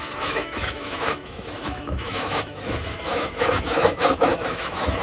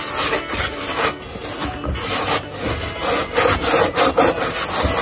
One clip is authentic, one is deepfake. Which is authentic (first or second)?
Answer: second